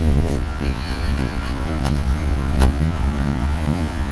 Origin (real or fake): fake